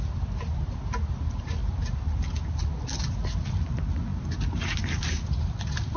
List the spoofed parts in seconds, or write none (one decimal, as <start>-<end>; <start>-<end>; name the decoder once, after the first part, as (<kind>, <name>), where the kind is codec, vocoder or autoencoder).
none